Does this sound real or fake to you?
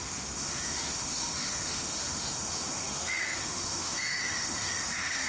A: fake